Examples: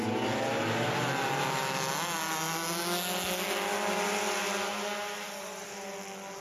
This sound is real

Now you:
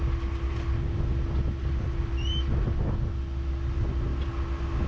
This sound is real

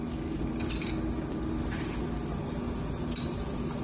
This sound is real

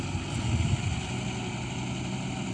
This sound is real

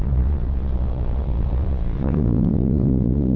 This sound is fake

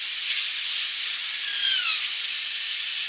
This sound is fake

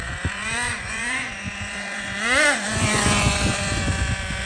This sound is fake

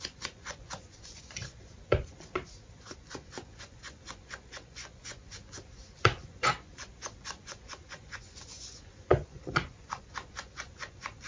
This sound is fake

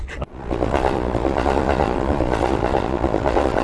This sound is fake